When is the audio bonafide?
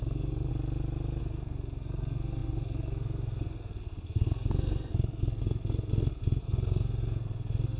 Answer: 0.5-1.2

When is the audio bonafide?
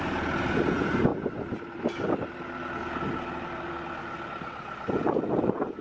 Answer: 0.0-5.8